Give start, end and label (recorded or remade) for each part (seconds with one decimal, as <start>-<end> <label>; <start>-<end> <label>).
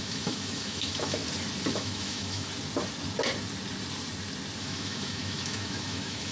0.0-1.2 remade; 1.2-1.7 recorded; 1.7-2.5 remade; 2.5-4.6 recorded; 4.6-6.3 remade